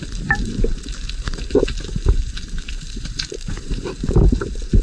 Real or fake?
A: fake